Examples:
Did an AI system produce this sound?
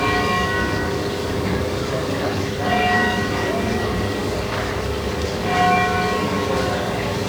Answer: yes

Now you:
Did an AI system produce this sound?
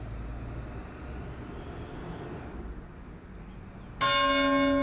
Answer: no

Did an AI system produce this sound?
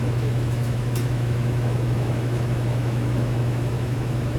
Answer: yes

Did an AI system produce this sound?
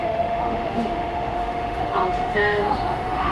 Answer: yes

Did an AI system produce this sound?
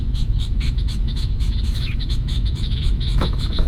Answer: yes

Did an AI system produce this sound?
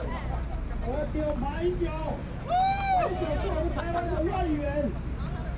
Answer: no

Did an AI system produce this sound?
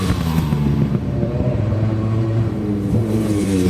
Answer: yes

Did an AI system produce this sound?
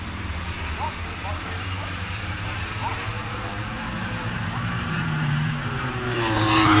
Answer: yes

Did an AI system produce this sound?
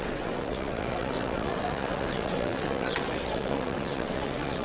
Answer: yes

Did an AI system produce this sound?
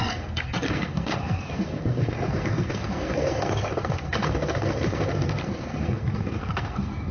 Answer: yes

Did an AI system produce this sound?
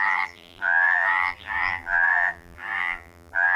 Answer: yes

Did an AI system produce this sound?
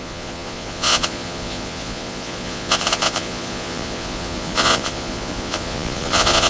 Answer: yes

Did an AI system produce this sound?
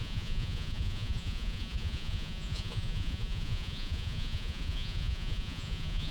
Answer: yes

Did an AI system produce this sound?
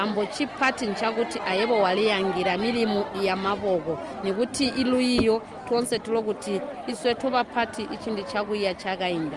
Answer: no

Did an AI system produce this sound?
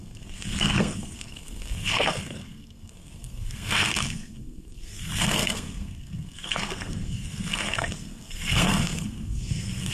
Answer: yes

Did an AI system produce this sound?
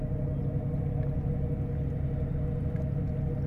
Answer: no